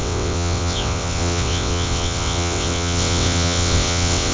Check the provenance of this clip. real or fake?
fake